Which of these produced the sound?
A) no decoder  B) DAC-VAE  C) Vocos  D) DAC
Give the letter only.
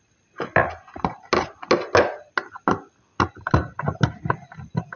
A